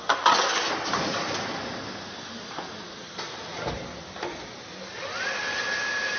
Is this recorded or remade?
recorded